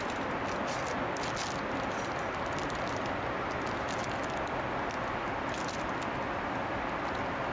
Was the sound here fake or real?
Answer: real